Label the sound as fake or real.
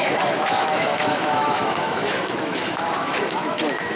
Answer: fake